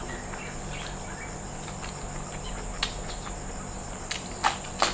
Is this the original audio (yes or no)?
yes